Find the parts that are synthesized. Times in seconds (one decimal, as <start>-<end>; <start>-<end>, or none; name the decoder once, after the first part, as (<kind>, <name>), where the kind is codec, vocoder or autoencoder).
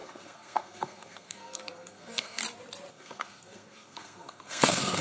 0.0-2.4 (codec, SNAC); 2.9-5.0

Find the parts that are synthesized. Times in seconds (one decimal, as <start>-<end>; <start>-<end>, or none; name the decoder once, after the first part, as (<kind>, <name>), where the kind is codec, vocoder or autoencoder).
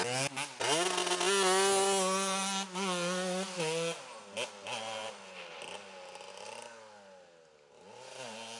none